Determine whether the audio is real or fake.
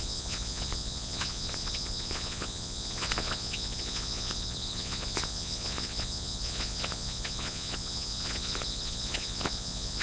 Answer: fake